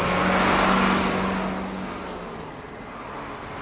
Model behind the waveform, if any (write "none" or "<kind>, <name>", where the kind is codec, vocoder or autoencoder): none